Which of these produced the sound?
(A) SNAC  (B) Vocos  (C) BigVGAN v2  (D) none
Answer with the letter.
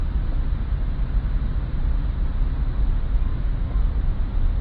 C